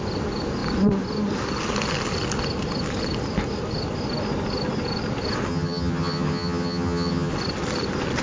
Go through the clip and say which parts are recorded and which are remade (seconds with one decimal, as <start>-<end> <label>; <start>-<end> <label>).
0.0-5.5 recorded; 5.5-7.3 remade; 7.3-8.2 recorded